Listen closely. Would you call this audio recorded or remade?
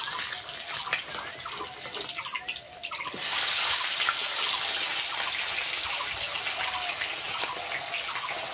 recorded